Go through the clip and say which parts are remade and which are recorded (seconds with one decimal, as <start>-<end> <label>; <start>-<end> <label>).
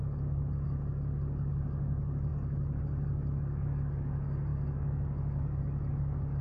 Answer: 0.0-6.4 remade